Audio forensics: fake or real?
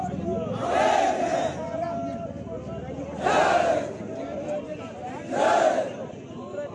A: real